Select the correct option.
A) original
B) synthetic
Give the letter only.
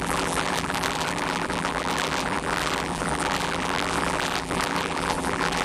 B